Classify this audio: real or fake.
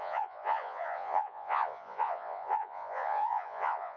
fake